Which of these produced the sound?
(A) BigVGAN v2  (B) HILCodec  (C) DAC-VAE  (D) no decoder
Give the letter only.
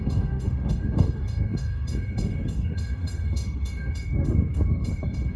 C